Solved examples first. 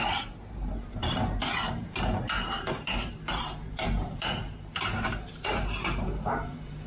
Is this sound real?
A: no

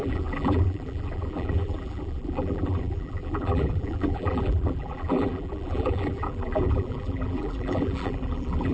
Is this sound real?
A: no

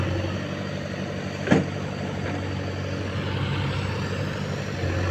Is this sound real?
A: yes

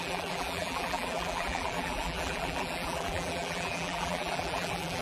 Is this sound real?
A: no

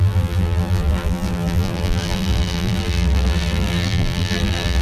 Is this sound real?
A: no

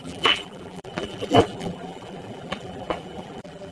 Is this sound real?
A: no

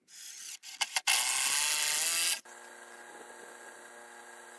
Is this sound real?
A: yes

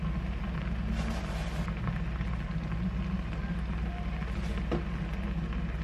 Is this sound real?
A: yes